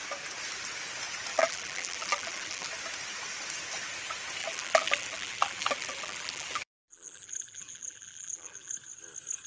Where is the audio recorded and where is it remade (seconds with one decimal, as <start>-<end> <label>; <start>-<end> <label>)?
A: 0.0-1.3 recorded; 1.3-2.7 remade; 2.7-4.4 recorded; 4.4-8.7 remade; 8.7-9.5 recorded